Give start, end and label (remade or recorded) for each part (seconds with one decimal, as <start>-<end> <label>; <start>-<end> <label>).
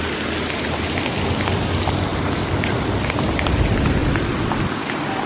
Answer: 0.0-5.3 recorded